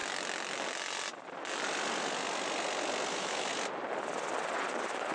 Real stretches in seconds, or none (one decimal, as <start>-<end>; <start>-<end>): 0.0-3.1; 3.5-5.1